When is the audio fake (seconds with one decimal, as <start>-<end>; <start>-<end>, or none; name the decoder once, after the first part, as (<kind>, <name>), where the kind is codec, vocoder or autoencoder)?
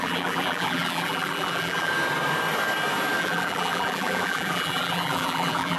0.0-1.9 (vocoder, BigVGAN v2); 3.2-5.8